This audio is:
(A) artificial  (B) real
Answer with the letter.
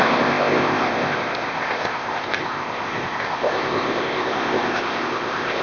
A